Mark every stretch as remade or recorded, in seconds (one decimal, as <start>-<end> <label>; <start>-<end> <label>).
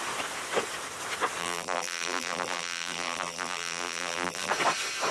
0.0-1.4 recorded; 1.4-4.5 remade; 4.5-5.1 recorded